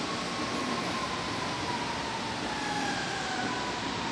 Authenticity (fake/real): real